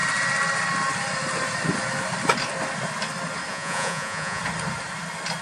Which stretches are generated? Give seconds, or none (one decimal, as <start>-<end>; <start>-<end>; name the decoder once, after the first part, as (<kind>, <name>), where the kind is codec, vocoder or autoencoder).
3.5-4.4 (vocoder, Vocos)